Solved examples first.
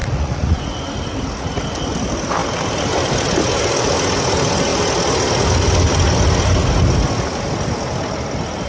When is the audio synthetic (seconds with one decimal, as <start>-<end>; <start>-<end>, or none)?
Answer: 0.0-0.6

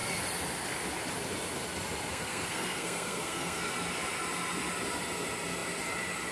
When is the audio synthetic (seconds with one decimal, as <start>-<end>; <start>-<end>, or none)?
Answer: 2.1-3.7

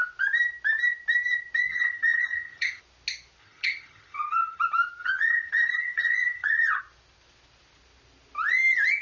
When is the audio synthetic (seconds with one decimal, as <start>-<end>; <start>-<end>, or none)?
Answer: 1.7-2.8; 3.4-4.6; 5.0-6.8

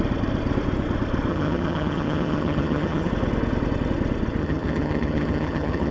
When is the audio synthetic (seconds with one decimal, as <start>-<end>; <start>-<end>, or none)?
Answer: 1.3-3.1; 4.4-5.9

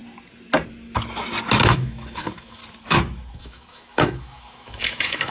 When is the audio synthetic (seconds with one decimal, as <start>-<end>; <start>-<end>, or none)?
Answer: 1.6-2.6; 3.3-5.3